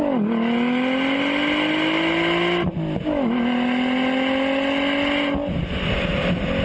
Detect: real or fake real